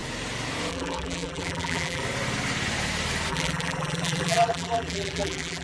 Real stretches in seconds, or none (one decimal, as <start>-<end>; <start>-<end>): 0.0-0.7; 2.0-3.3